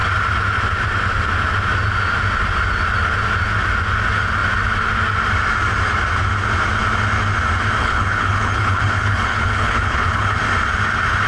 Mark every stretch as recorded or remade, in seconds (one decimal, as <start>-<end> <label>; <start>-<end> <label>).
0.0-7.8 recorded; 7.8-10.4 remade; 10.4-11.3 recorded